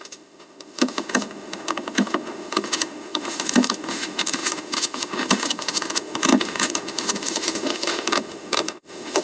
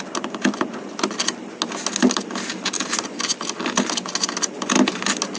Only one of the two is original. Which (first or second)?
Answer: second